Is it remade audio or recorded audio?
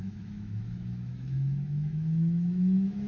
remade